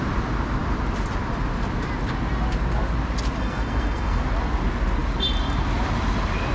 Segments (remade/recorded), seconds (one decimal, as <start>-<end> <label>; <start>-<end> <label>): 0.0-3.4 recorded; 3.4-4.2 remade; 4.2-6.5 recorded